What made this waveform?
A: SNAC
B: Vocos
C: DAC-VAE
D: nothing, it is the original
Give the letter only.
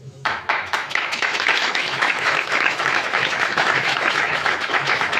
C